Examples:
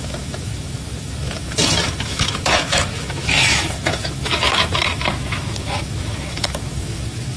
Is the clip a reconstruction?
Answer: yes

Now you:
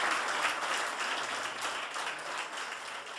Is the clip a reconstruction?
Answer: no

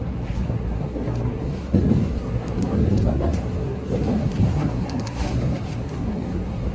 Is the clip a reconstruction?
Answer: yes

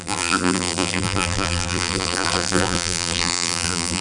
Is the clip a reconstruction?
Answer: yes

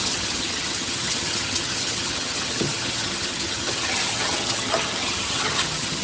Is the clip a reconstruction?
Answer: yes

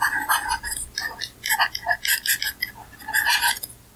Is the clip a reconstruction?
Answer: no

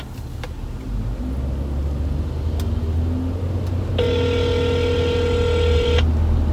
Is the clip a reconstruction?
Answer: no